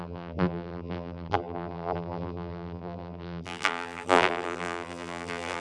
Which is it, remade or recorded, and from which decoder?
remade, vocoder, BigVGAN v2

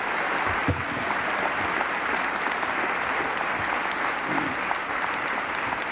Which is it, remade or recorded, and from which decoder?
recorded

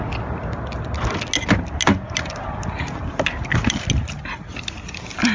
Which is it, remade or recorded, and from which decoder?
recorded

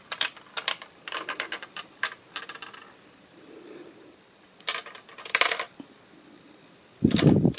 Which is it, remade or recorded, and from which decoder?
remade, vocoder, BigVGAN v2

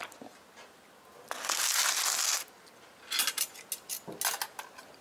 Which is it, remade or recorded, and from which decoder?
recorded